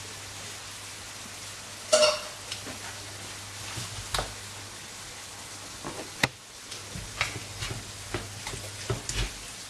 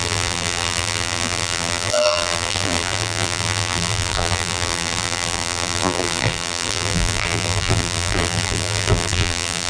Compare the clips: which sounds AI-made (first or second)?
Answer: second